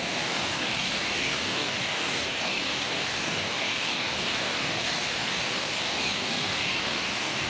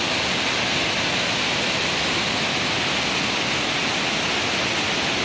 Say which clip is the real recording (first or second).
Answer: second